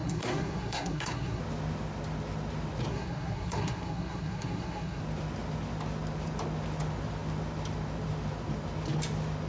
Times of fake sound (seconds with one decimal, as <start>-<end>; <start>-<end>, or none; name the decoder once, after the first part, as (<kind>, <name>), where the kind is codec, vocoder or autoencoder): 0.0-1.4 (codec, SNAC); 2.9-5.0